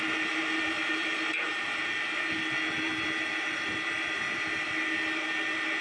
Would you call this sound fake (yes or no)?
no